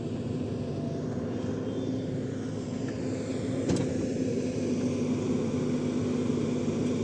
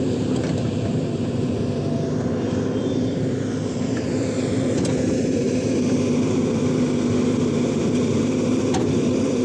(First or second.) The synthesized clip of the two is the second